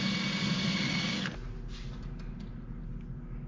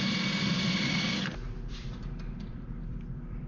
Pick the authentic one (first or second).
first